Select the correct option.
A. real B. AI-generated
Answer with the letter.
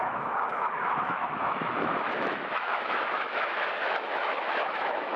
B